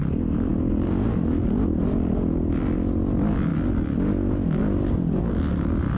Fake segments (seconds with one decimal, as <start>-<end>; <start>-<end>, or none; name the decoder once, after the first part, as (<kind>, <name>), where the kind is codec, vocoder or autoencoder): none